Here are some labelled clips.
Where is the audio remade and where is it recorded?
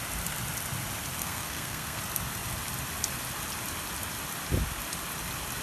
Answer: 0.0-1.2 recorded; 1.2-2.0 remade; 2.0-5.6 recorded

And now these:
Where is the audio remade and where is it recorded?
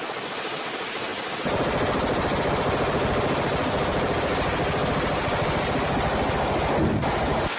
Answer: 0.0-7.6 recorded